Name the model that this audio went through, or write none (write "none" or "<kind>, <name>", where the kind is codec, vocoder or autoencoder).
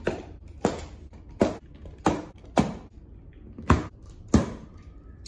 none